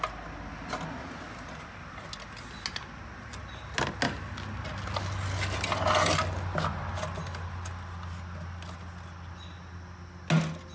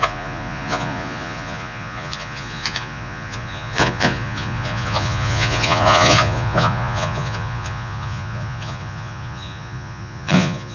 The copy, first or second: second